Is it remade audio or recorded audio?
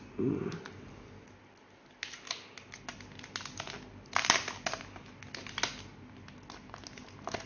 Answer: recorded